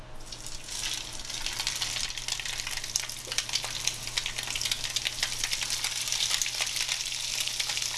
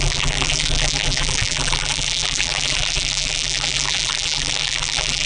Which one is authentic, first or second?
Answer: first